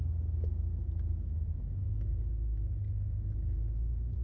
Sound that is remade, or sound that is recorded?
recorded